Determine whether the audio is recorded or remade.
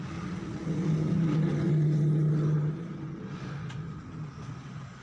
recorded